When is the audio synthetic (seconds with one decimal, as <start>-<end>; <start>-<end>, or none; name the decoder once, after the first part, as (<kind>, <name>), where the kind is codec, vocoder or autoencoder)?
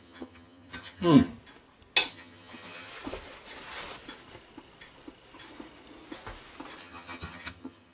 0.0-1.3 (vocoder, HiFi-GAN); 2.1-2.9; 6.8-7.9